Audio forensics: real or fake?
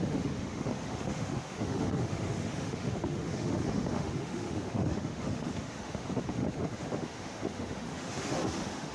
fake